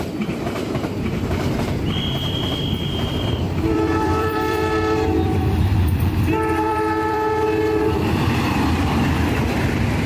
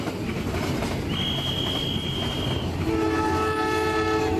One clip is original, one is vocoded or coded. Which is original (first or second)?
second